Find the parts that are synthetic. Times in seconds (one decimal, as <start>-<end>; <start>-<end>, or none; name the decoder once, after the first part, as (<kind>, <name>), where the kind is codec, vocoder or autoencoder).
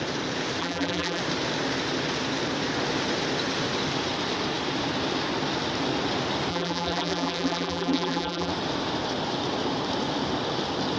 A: 0.6-1.2 (vocoder, BigVGAN v2); 6.5-8.5